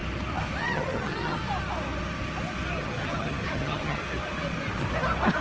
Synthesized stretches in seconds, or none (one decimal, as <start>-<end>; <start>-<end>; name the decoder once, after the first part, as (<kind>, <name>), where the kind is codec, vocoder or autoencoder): 0.6-1.4 (vocoder, HiFi-GAN); 2.8-4.0